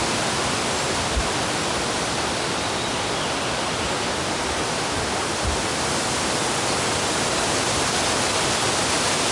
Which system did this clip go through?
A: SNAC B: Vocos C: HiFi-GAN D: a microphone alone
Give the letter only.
D